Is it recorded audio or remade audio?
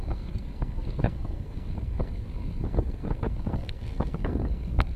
remade